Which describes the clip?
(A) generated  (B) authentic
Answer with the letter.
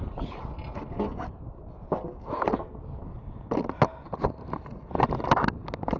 B